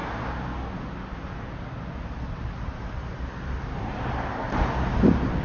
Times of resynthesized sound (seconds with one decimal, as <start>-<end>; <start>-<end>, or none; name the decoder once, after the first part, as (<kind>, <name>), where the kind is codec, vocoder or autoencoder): none